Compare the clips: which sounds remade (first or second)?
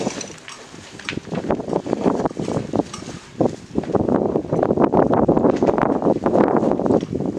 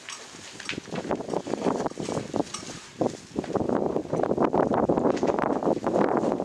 first